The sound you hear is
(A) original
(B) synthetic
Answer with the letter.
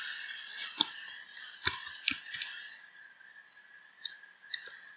A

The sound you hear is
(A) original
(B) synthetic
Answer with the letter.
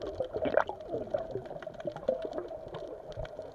A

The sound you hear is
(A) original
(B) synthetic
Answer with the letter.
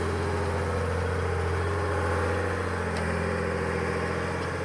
A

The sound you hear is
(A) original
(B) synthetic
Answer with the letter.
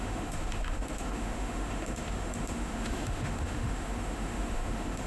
B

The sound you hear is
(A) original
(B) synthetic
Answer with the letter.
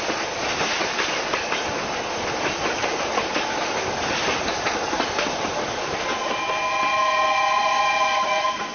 A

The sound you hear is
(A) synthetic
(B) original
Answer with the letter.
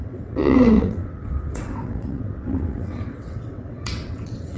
A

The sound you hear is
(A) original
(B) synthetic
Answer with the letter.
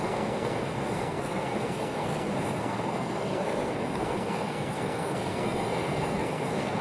B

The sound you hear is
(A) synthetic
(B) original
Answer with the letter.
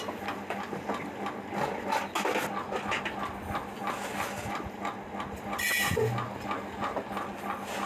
B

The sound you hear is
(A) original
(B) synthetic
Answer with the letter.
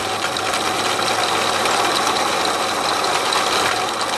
A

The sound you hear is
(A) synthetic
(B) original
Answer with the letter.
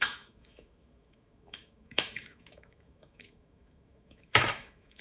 A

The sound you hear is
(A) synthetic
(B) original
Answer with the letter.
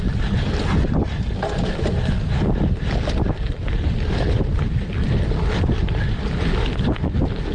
B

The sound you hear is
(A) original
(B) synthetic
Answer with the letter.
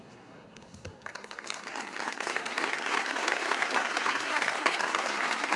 B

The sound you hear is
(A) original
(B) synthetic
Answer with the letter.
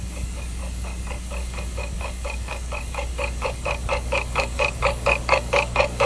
B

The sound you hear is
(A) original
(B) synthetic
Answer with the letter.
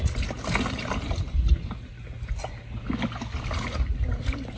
A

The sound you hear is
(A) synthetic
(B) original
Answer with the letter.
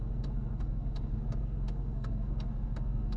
A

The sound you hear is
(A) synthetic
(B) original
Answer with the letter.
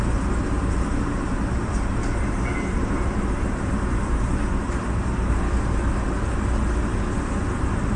A